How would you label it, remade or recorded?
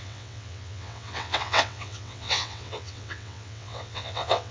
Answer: remade